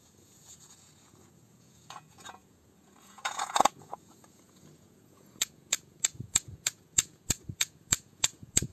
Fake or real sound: fake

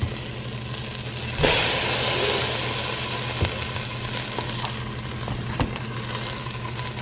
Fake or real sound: real